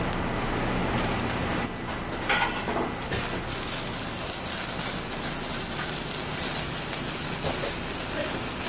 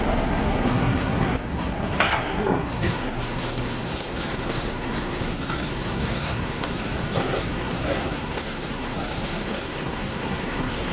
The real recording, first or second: first